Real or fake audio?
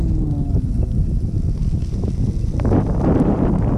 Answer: real